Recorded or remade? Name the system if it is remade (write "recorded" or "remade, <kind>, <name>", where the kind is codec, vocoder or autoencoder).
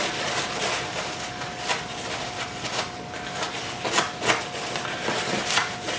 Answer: recorded